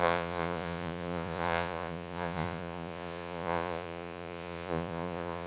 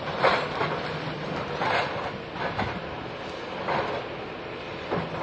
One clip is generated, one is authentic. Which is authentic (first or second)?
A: second